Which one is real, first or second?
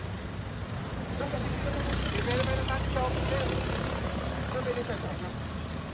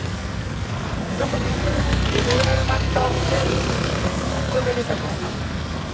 first